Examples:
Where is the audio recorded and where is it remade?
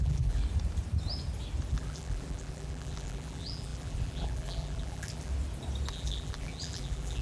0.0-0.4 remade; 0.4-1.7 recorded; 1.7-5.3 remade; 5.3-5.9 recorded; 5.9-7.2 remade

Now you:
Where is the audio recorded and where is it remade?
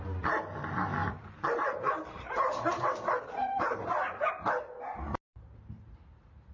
0.0-1.0 recorded; 1.0-4.3 remade; 4.3-6.5 recorded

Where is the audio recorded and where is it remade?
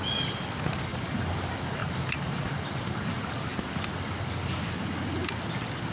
0.0-0.9 recorded; 0.9-1.4 remade; 1.4-1.8 recorded; 1.8-3.0 remade; 3.0-5.9 recorded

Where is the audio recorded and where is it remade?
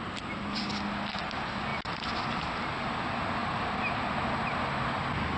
0.0-3.4 recorded; 3.4-4.0 remade; 4.0-5.4 recorded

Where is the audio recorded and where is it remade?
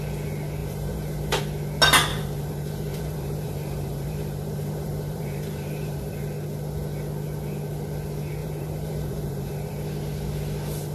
0.0-0.6 recorded; 0.6-1.4 remade; 1.4-2.1 recorded; 2.1-6.2 remade; 6.2-8.4 recorded; 8.4-9.9 remade; 9.9-10.9 recorded